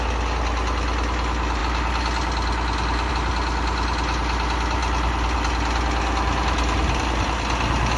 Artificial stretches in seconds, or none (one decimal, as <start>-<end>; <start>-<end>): none